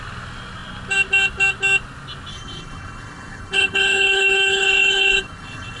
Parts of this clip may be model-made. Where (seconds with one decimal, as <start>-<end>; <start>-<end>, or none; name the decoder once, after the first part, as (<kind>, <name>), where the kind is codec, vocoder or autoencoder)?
2.3-5.8 (codec, HILCodec)